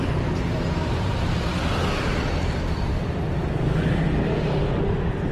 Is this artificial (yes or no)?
no